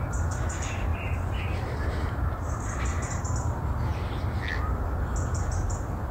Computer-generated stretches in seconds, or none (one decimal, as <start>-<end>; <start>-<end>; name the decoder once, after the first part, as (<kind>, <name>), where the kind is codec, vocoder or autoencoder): 0.9-2.8 (vocoder, BigVGAN v2)